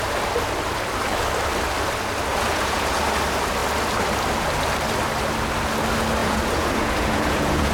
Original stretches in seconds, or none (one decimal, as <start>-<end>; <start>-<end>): 0.0-2.3; 3.0-6.2

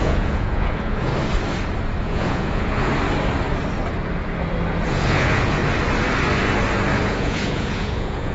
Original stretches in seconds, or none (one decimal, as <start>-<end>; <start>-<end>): 1.1-2.0; 2.9-4.9; 5.6-7.0

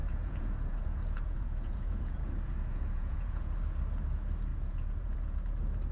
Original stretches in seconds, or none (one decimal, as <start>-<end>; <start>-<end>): 3.5-4.5; 5.4-5.9

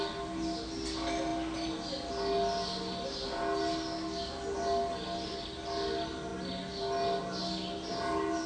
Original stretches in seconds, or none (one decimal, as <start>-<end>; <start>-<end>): 0.0-8.5

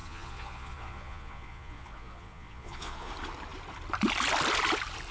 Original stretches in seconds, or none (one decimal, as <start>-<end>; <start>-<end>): 3.1-5.1

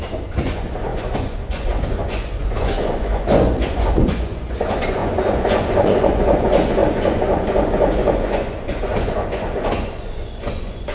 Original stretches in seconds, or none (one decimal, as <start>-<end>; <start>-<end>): none

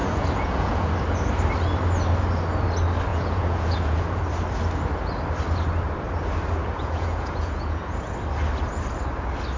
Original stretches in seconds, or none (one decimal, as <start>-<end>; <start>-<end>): 0.9-3.1; 4.2-6.6; 8.1-9.6